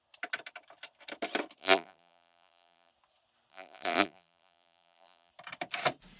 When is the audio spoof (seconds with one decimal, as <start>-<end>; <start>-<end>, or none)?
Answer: 1.6-2.9; 3.5-5.3